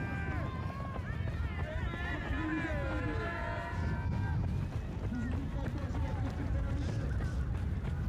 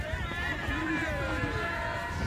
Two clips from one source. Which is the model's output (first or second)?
second